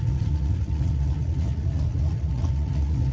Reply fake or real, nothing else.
fake